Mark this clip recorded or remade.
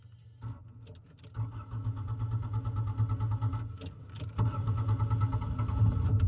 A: recorded